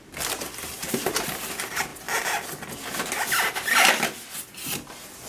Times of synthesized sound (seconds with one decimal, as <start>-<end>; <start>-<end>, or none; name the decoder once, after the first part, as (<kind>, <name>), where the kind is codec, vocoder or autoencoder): 0.8-1.5 (vocoder, BigVGAN v2)